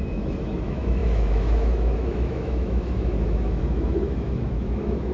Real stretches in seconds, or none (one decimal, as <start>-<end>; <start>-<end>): none